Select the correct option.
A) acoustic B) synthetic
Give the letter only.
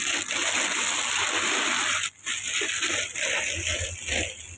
A